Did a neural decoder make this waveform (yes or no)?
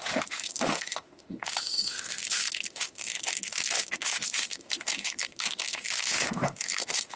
yes